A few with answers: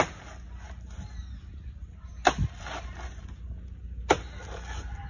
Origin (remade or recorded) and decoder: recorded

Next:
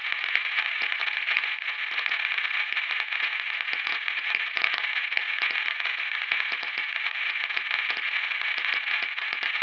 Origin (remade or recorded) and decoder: remade, vocoder, Vocos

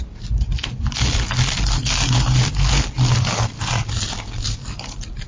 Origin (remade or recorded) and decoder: recorded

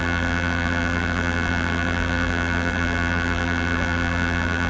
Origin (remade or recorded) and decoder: remade, vocoder, BigVGAN v2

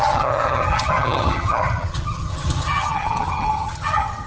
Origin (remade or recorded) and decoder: remade, vocoder, HiFi-GAN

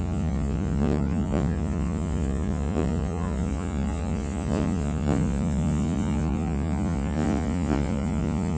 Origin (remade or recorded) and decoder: remade, vocoder, Vocos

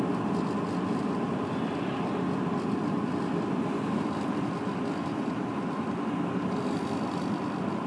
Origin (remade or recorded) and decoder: recorded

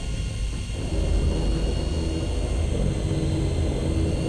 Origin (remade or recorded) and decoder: recorded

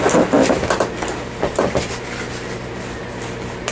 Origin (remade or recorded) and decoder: recorded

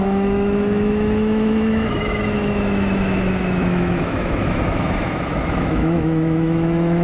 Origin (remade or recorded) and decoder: remade, autoencoder, DAC-VAE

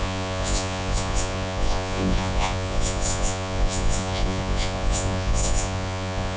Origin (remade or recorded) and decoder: remade, vocoder, Vocos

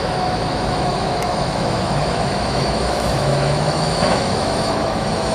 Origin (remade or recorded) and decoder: remade, autoencoder, DAC-VAE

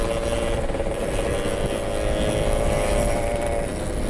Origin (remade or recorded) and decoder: recorded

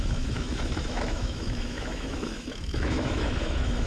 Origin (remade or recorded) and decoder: remade, autoencoder, DAC-VAE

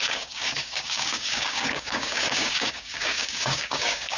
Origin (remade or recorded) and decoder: remade, codec, DAC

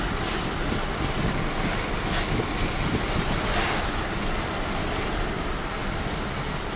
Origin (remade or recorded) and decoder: recorded